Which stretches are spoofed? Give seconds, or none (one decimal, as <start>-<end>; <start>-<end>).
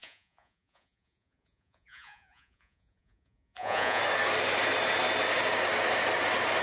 0.0-4.0